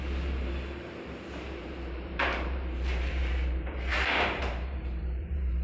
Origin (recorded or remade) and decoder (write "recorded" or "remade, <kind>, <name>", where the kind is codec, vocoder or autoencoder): remade, vocoder, BigVGAN v2